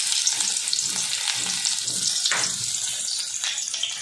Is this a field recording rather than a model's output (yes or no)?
yes